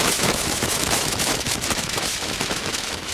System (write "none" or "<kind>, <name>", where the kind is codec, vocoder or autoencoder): autoencoder, DAC-VAE